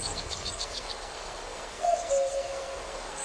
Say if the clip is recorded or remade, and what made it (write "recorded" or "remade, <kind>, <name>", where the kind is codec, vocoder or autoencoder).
remade, codec, SNAC